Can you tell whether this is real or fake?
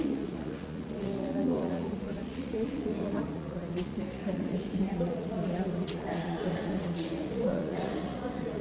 fake